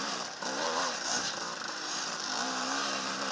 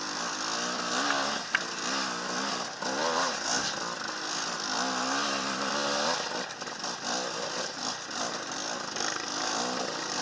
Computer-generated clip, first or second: first